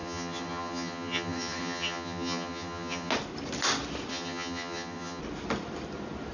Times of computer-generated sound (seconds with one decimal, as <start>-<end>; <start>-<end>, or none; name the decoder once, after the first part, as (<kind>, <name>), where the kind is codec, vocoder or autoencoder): 0.0-3.1 (vocoder, HiFi-GAN); 4.1-5.2